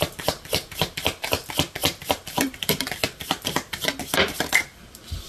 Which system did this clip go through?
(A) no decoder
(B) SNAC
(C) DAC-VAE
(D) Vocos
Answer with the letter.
A